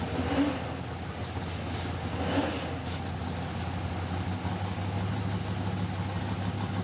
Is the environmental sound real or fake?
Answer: real